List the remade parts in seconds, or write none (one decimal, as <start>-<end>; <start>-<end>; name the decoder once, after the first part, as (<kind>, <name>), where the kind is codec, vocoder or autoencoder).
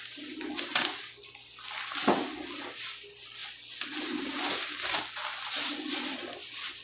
none